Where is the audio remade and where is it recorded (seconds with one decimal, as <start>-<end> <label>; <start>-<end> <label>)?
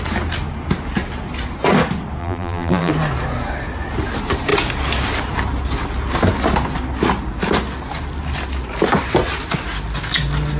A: 0.0-2.2 recorded; 2.2-2.9 remade; 2.9-10.6 recorded